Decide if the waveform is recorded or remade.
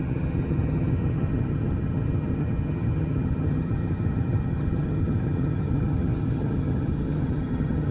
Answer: remade